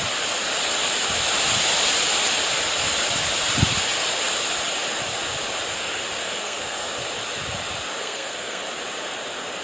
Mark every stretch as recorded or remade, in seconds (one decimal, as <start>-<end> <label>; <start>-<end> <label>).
0.0-6.2 recorded; 6.2-6.9 remade; 6.9-8.0 recorded; 8.0-8.6 remade; 8.6-9.6 recorded